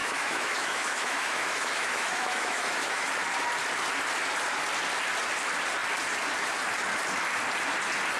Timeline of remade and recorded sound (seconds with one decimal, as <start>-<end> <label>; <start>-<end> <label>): 0.0-3.1 remade; 3.1-8.2 recorded